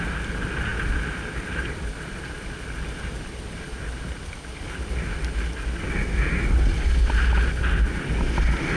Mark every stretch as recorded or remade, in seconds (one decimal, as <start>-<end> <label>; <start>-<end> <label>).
0.0-8.8 recorded